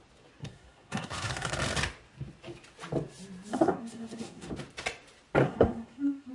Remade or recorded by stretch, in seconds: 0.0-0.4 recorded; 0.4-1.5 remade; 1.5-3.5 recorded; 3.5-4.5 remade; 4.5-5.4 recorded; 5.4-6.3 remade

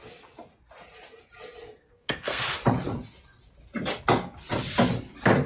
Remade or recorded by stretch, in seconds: 0.0-1.8 recorded; 1.8-2.4 remade; 2.4-5.5 recorded

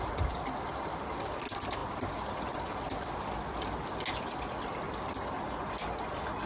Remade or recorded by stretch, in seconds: 0.0-6.5 recorded

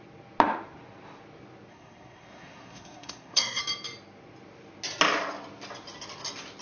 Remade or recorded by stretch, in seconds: 0.0-1.7 recorded; 1.7-3.6 remade; 3.6-6.6 recorded